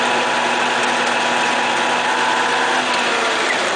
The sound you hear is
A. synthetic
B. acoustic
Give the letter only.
B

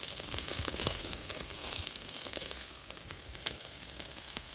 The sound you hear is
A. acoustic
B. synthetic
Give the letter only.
B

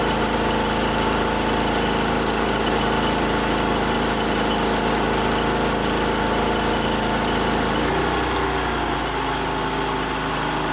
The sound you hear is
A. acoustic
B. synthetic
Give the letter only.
A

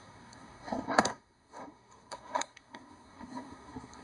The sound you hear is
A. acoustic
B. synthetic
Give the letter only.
B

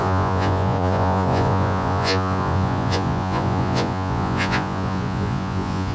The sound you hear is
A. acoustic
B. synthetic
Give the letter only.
B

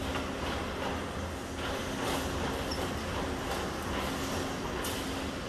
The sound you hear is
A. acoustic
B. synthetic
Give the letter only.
A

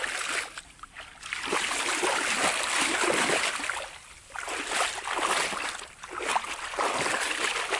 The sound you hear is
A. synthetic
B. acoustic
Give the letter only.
A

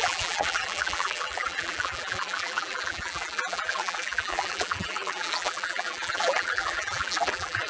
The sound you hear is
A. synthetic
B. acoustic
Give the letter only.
A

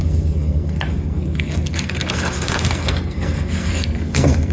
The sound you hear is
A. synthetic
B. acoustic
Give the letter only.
A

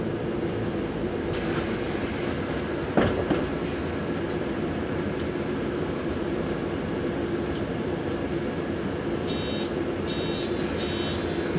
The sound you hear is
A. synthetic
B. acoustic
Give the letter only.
B